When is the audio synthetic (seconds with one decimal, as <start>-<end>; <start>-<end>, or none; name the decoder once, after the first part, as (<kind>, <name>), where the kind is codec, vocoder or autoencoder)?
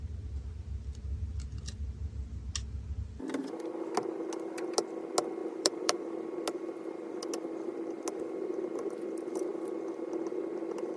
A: 5.4-6.1 (vocoder, BigVGAN v2)